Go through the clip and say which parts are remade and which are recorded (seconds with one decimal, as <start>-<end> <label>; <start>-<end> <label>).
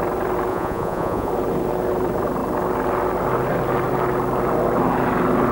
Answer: 0.0-0.5 recorded; 0.5-1.3 remade; 1.3-5.5 recorded